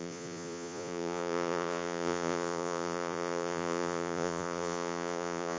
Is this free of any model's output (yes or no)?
no